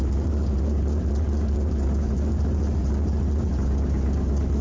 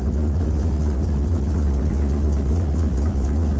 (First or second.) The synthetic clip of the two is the second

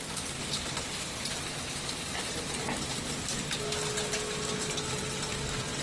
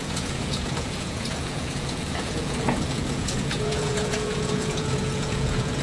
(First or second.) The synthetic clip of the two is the second